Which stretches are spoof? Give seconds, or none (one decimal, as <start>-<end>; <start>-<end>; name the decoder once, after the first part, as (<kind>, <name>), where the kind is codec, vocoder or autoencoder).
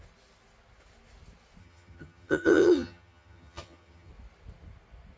1.6-4.1 (vocoder, HiFi-GAN)